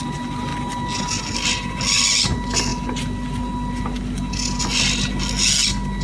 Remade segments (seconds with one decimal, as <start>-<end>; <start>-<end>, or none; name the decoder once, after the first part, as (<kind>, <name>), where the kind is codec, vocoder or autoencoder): none